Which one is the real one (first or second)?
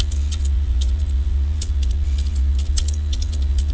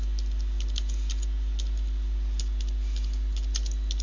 second